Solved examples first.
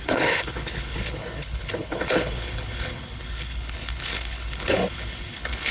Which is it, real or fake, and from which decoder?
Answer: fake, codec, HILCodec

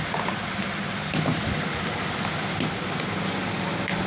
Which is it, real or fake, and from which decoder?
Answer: real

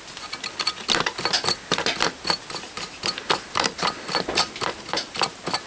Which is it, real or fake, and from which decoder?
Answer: real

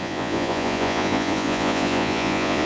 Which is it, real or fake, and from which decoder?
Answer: fake, vocoder, Vocos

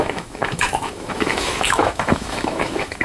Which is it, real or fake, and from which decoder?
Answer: fake, autoencoder, DAC-VAE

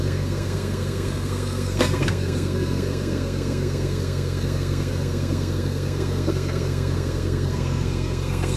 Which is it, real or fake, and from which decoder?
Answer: fake, codec, SNAC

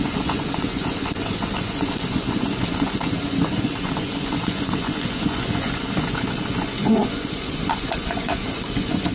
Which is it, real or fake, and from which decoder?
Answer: fake, vocoder, Vocos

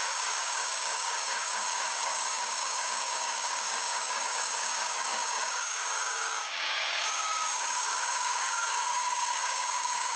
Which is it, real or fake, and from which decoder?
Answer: fake, codec, DAC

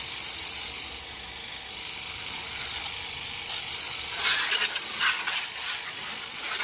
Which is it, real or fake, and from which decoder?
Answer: real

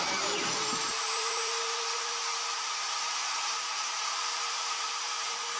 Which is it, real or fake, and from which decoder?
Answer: fake, vocoder, BigVGAN v2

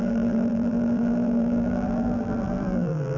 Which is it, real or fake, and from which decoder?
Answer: fake, vocoder, BigVGAN v2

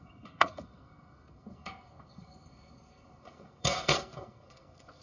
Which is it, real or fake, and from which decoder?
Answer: fake, codec, SNAC